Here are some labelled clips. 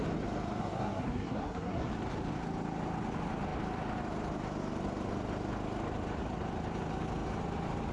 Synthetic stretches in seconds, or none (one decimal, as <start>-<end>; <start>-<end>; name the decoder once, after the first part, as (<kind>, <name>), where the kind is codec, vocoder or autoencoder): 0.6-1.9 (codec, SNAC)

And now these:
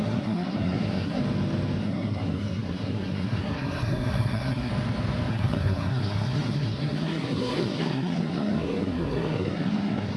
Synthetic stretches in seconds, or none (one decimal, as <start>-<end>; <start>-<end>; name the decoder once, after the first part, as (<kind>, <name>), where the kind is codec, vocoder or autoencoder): 0.0-1.2 (codec, SNAC); 1.8-4.7; 5.3-10.2

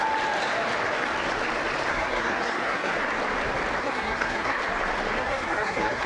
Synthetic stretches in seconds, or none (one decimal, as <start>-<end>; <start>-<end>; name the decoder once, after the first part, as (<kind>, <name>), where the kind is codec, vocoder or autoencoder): 1.9-2.9 (codec, SNAC); 3.8-4.6; 5.2-6.1

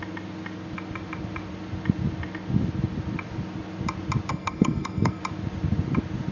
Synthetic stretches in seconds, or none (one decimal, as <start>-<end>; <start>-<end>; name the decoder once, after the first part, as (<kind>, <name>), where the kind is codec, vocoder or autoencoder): 4.3-5.2 (codec, SNAC)

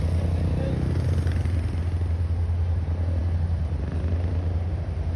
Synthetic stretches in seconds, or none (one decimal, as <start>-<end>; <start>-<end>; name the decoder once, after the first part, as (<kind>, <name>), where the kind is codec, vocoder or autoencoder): none

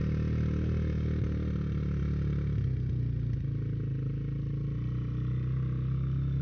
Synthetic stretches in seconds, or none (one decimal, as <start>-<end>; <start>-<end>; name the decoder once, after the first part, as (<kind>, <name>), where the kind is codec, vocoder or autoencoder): none

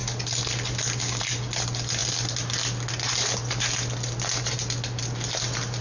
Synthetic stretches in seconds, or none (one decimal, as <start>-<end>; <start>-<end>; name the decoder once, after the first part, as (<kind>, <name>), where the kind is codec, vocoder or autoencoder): none

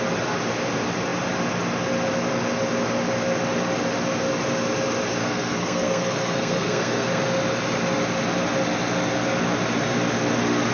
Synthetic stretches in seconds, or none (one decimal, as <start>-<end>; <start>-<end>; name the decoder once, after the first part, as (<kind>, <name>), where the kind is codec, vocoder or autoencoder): 5.2-7.2 (codec, SNAC)